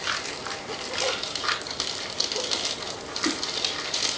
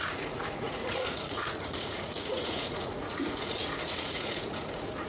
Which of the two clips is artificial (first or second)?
second